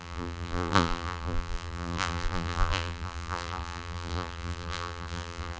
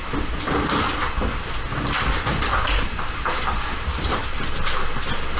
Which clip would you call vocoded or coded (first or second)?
first